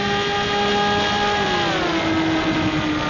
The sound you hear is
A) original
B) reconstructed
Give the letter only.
A